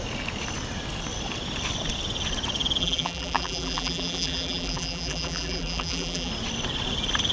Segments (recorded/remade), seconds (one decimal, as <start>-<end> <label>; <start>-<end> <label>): 0.0-2.8 recorded; 2.8-6.3 remade; 6.3-7.3 recorded